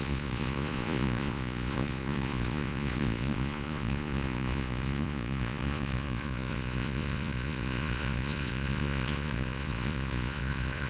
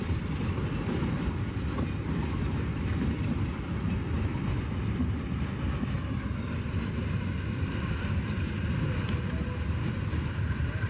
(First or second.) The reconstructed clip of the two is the first